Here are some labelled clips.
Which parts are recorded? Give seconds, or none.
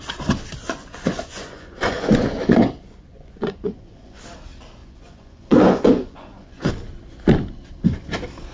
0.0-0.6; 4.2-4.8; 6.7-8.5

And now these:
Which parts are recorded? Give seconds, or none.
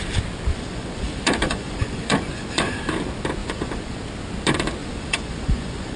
0.0-0.5; 2.8-3.4; 4.0-4.8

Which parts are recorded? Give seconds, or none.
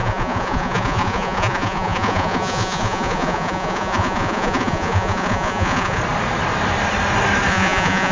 6.0-7.5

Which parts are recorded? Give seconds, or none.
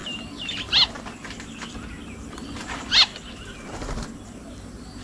0.0-5.0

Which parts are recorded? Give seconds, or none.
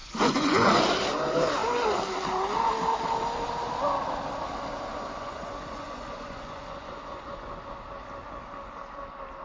0.7-4.9; 7.6-9.4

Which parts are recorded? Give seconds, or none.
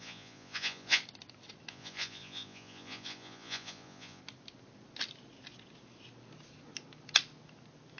1.0-1.7; 4.2-8.0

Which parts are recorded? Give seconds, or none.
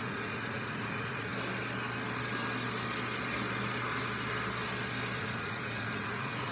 1.3-5.2